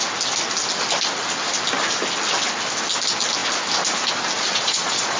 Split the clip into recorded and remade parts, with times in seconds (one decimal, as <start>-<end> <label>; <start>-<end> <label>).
0.0-4.5 recorded; 4.5-5.2 remade